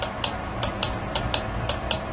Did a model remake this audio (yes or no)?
no